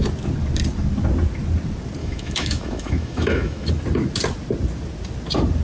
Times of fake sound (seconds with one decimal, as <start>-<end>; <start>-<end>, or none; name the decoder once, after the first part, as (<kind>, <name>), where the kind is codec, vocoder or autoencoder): 2.0-3.7 (autoencoder, DAC-VAE)